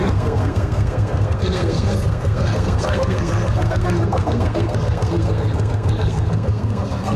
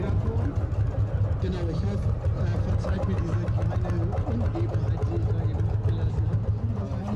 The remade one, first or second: first